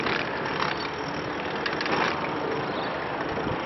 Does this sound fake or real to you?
real